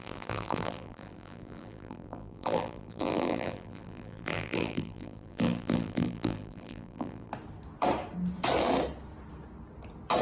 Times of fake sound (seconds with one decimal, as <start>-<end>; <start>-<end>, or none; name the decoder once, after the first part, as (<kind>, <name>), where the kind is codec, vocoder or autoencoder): 0.0-7.3 (vocoder, BigVGAN v2)